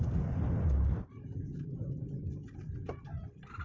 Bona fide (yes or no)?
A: yes